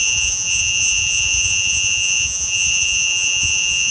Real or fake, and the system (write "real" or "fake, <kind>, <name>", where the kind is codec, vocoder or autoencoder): fake, vocoder, Vocos